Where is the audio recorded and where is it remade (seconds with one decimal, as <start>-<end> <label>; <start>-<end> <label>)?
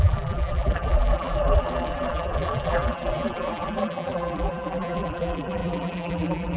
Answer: 0.0-6.6 remade